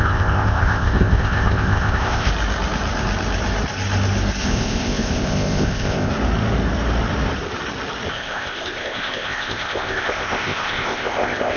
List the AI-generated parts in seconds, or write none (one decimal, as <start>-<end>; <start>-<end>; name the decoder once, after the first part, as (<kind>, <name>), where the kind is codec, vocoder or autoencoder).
0.0-2.3 (codec, ZipCodec); 4.4-6.1; 8.1-11.6